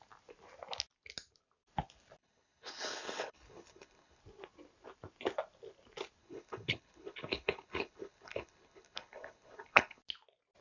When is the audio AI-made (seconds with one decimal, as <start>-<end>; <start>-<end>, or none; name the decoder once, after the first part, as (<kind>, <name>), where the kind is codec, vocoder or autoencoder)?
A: 2.2-4.2 (codec, HILCodec); 6.2-10.0